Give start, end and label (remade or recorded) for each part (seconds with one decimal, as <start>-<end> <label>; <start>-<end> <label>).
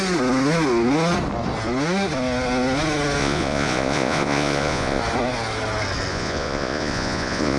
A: 0.0-3.2 recorded; 3.2-5.0 remade; 5.0-6.1 recorded; 6.1-7.6 remade